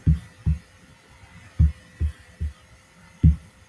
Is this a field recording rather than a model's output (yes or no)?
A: yes